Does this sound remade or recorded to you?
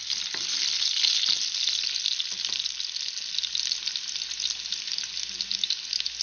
recorded